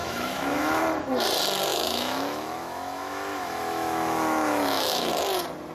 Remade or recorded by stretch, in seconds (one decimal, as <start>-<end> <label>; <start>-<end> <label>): 0.0-0.8 remade; 0.8-1.7 recorded; 1.7-5.1 remade; 5.1-5.7 recorded